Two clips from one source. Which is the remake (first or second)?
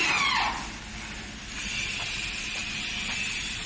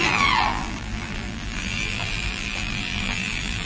second